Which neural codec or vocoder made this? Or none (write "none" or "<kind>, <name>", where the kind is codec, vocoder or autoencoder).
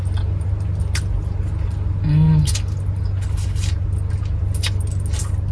none